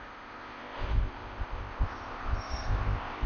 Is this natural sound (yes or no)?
no